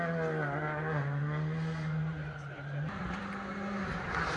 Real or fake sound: real